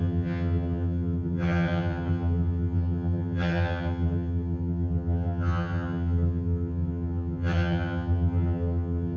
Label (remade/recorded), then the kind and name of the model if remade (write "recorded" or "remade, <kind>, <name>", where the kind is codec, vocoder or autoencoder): remade, vocoder, HiFi-GAN